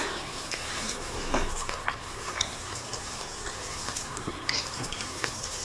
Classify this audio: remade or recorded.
remade